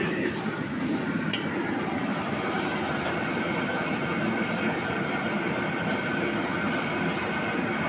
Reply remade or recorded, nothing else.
remade